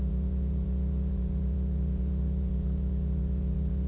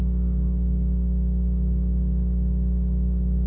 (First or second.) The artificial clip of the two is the first